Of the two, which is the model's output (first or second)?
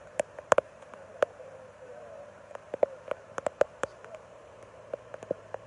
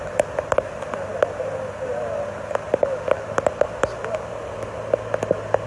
first